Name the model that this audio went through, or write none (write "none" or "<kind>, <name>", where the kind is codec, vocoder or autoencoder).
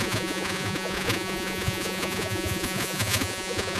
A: vocoder, Vocos